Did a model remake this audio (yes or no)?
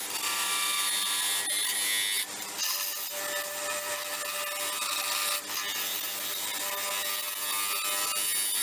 no